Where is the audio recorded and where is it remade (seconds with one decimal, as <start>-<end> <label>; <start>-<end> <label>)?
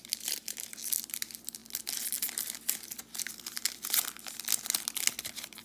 0.0-5.6 recorded